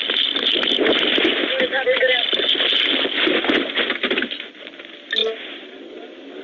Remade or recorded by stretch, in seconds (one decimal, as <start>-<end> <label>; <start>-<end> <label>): 0.0-6.4 recorded